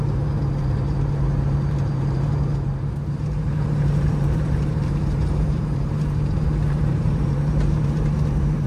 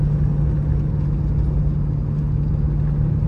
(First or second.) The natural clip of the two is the second